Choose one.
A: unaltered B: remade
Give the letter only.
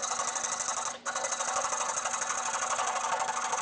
A